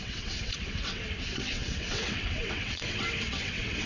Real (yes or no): no